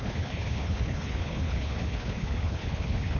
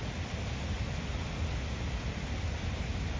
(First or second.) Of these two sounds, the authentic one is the second